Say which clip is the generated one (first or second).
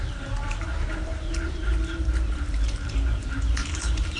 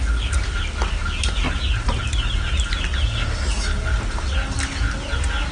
first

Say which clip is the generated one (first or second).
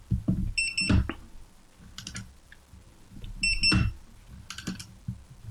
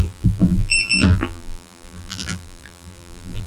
second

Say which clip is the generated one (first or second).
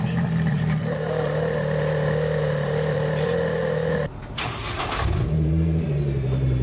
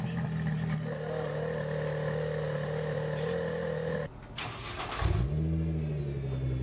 first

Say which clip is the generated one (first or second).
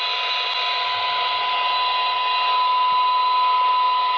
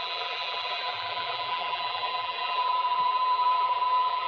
second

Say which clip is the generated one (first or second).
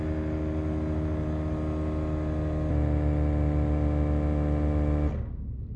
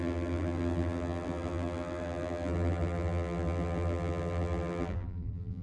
second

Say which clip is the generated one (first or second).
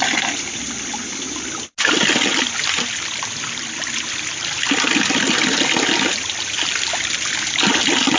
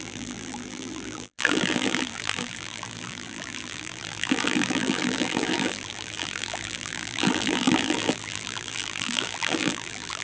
second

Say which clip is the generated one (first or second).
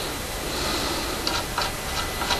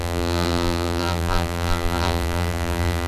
second